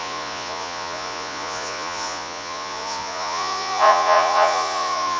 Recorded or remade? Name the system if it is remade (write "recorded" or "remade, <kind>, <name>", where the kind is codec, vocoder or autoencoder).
remade, vocoder, Vocos